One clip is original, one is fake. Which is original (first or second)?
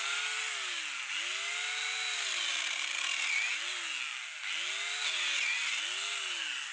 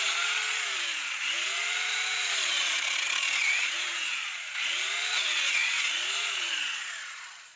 first